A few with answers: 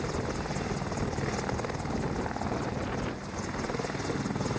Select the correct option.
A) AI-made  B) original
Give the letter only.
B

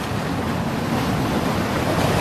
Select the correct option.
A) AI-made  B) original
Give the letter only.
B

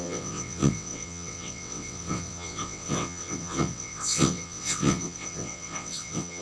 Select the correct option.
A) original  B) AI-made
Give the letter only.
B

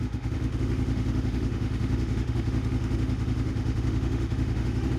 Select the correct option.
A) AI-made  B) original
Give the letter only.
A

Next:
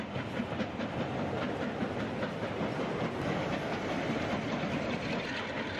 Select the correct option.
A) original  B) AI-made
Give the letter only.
A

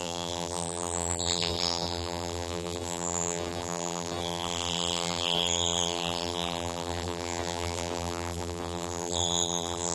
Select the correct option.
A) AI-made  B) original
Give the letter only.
A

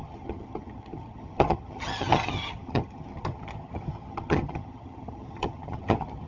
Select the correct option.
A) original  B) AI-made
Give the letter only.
B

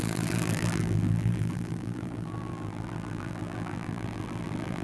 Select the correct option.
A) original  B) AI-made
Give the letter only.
B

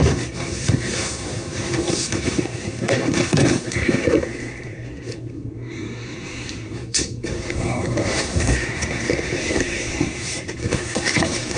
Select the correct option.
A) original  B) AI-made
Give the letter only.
B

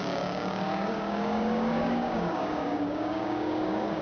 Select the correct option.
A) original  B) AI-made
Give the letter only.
B